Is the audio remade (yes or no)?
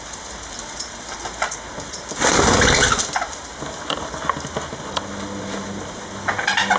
no